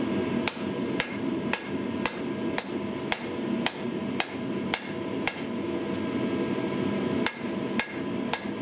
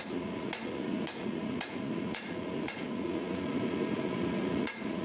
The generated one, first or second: second